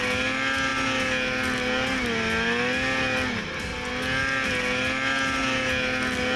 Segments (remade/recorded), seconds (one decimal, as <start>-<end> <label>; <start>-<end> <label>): 0.0-6.4 recorded